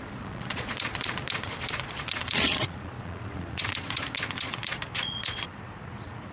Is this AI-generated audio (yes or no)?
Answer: yes